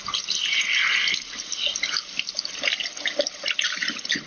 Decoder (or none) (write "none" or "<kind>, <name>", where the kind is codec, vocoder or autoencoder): none